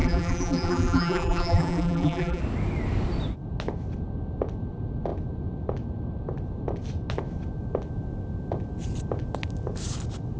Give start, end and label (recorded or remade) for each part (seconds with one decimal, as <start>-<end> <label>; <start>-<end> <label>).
0.0-2.4 remade; 2.4-10.4 recorded